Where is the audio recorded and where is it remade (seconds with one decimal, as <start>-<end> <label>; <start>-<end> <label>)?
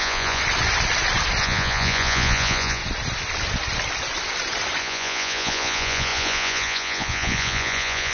0.0-0.4 remade; 0.4-1.4 recorded; 1.4-2.8 remade; 2.8-4.8 recorded; 4.8-8.1 remade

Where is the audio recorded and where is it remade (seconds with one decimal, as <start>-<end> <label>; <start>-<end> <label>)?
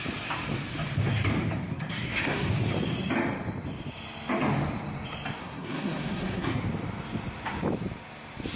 0.0-1.7 recorded; 1.7-2.5 remade; 2.5-5.4 recorded; 5.4-6.6 remade; 6.6-8.6 recorded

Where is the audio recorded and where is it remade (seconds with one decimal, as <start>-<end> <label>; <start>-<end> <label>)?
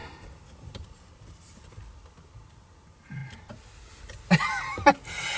0.0-5.4 recorded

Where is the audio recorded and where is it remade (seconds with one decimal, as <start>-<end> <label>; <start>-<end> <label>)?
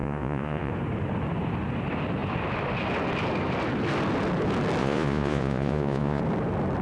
0.0-0.7 remade; 0.7-4.8 recorded; 4.8-6.2 remade; 6.2-6.8 recorded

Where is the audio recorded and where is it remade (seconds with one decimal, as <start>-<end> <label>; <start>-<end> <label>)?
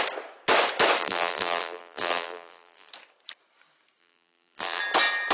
0.0-1.0 recorded; 1.0-2.9 remade; 2.9-4.0 recorded; 4.0-4.8 remade; 4.8-5.3 recorded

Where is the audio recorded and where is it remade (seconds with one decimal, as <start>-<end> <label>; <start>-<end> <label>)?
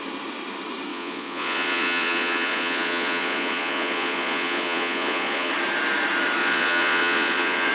0.0-0.9 recorded; 0.9-5.5 remade; 5.5-6.4 recorded; 6.4-7.7 remade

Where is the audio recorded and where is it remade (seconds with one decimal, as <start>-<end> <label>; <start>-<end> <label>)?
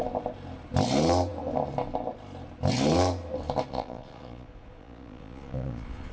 0.0-3.7 recorded; 3.7-6.1 remade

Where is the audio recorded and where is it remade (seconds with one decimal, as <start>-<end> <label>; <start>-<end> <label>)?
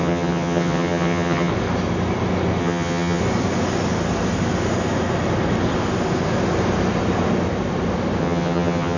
0.0-1.5 remade; 1.5-2.6 recorded; 2.6-3.2 remade; 3.2-8.2 recorded; 8.2-9.0 remade